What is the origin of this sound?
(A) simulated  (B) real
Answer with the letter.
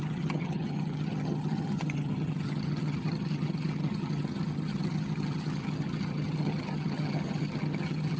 A